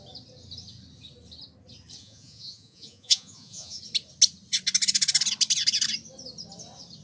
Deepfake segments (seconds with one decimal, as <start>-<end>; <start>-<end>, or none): 2.0-3.8